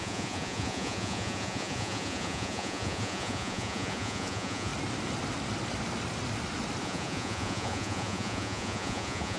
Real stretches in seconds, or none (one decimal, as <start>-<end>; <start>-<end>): 4.7-6.8